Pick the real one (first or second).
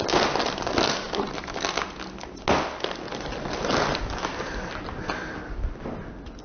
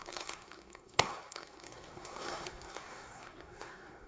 first